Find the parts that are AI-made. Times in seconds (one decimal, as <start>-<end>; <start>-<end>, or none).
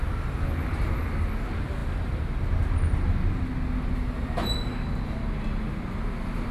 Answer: none